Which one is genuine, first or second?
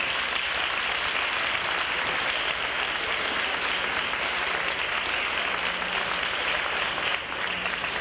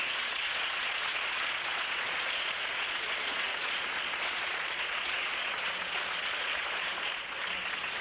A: first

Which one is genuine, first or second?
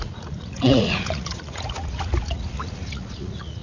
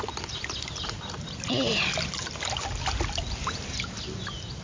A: second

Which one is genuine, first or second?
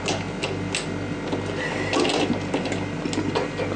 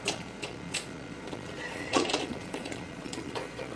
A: first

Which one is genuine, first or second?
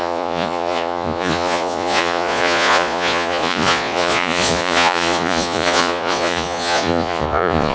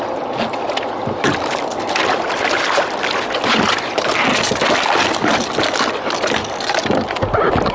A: second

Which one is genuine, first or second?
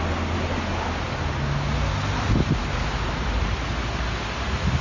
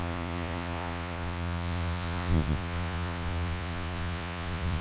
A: first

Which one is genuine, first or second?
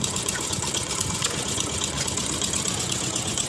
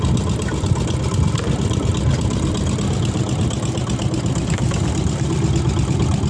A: second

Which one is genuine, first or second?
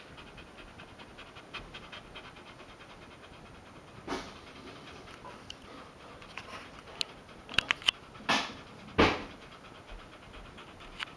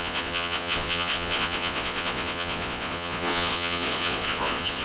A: first